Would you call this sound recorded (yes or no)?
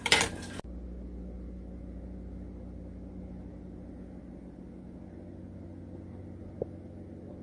yes